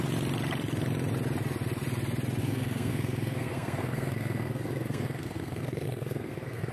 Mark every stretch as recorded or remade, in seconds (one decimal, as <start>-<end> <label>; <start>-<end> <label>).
0.0-2.4 recorded; 2.4-6.7 remade